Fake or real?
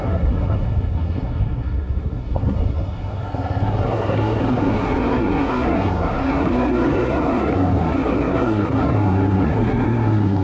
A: fake